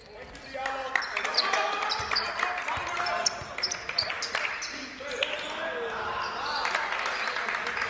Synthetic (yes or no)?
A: no